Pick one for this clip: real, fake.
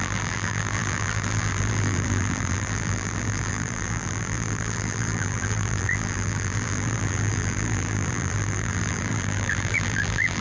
fake